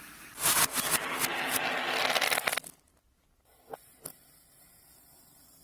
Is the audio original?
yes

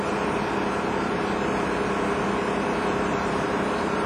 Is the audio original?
yes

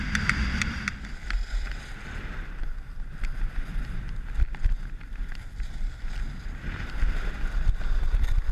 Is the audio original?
yes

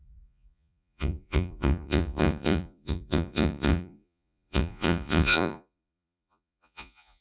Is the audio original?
no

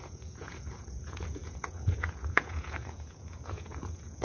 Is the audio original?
no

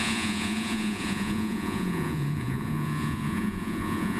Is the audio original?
no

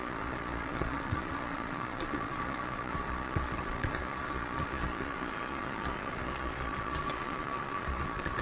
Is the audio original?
no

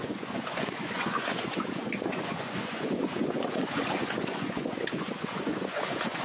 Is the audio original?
no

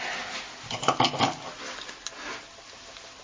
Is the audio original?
yes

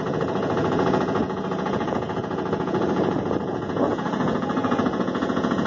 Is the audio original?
no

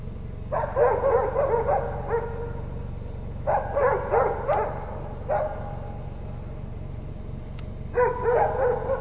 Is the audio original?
yes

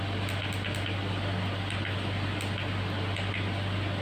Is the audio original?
yes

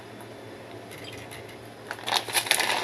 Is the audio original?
yes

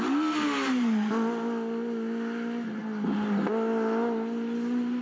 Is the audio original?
yes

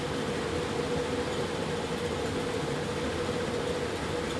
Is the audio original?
yes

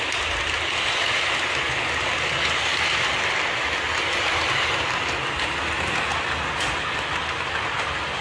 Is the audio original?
yes